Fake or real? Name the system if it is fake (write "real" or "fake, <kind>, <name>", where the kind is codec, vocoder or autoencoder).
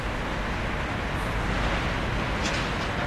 real